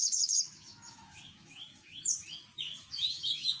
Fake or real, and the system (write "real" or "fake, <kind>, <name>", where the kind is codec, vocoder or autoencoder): fake, autoencoder, DAC-VAE